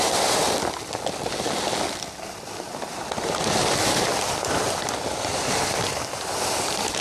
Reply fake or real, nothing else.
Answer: real